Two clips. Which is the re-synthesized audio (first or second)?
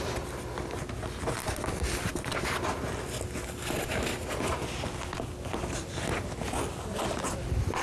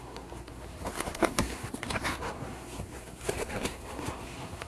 second